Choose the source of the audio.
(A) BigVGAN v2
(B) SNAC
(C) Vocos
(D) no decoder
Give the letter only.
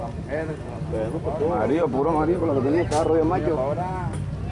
D